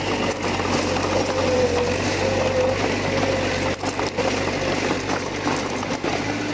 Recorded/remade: recorded